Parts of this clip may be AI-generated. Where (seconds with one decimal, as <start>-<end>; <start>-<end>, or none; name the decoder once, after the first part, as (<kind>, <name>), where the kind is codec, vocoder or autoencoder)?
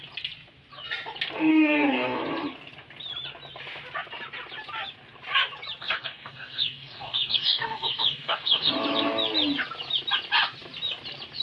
1.5-2.2 (codec, DAC); 5.8-8.7